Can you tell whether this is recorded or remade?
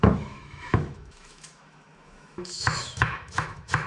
remade